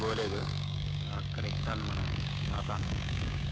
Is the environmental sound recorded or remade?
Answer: remade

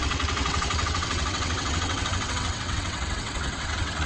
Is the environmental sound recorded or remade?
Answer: remade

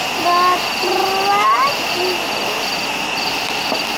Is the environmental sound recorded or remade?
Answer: recorded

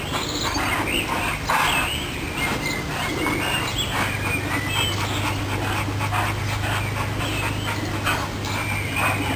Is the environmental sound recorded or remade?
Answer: recorded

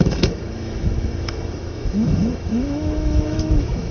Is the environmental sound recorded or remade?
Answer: remade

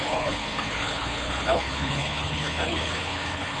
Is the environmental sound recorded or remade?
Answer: remade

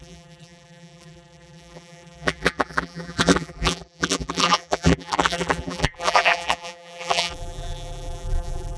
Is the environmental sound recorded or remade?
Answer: remade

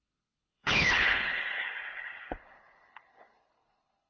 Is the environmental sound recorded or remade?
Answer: remade